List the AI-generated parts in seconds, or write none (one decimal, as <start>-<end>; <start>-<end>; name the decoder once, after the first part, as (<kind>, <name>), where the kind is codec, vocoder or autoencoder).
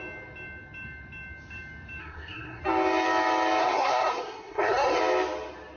2.0-2.6 (codec, SNAC); 3.6-5.0